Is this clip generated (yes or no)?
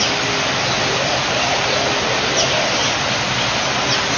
no